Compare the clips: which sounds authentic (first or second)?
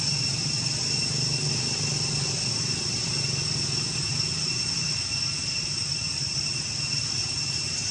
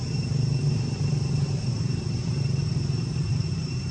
first